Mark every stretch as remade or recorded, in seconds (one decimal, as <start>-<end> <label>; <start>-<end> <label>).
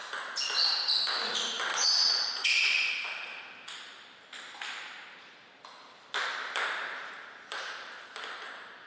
0.0-1.7 recorded; 1.7-2.9 remade; 2.9-8.9 recorded